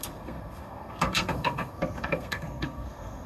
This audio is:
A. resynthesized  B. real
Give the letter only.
A